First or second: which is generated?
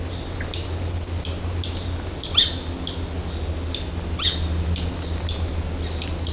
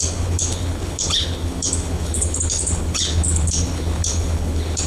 second